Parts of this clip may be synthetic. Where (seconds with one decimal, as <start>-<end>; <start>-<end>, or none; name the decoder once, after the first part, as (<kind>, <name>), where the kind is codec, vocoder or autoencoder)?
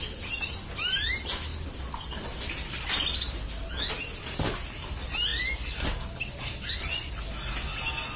none